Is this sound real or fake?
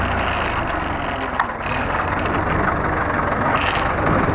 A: real